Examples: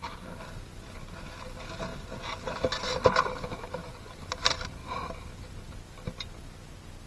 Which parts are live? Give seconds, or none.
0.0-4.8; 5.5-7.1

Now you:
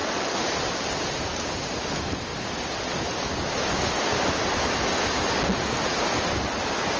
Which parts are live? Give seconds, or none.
0.0-7.0

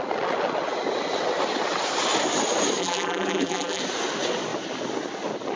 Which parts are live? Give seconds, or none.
0.0-2.8; 3.8-5.6

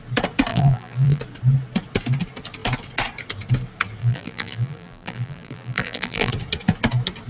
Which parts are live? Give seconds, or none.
0.0-0.5; 1.2-4.0; 6.3-7.3

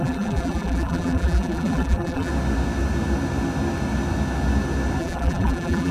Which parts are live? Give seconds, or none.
2.3-5.0

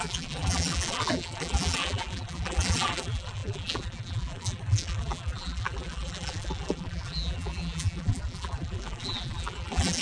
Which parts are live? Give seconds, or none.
none

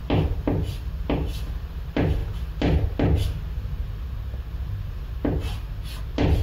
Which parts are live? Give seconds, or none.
0.0-6.4